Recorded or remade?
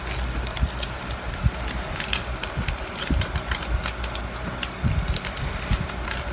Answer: recorded